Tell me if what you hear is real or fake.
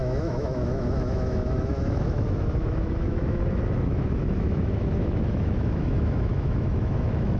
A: fake